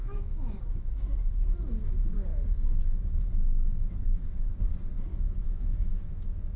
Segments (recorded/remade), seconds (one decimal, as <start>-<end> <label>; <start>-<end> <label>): 0.0-0.6 remade; 0.6-5.1 recorded; 5.1-6.1 remade; 6.1-6.6 recorded